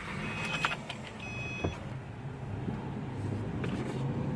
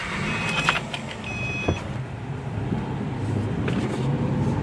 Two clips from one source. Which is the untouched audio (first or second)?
first